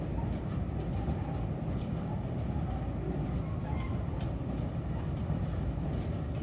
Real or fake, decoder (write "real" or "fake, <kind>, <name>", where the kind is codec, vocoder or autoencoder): real